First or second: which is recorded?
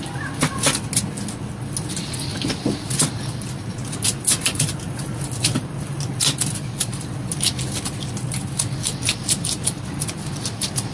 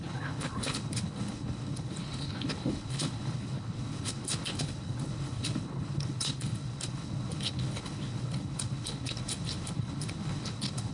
first